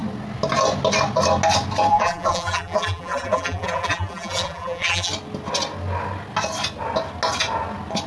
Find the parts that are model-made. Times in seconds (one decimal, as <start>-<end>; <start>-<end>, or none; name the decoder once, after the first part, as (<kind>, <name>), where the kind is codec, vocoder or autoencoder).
1.9-5.1 (vocoder, BigVGAN v2)